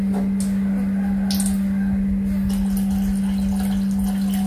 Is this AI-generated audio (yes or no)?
no